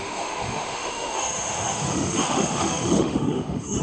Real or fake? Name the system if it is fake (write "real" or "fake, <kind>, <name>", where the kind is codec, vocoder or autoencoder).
fake, autoencoder, DAC-VAE